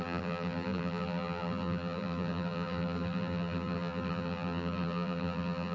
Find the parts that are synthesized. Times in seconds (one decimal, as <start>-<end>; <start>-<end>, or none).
0.0-5.7